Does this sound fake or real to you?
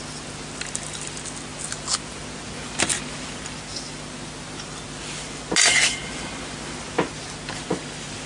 real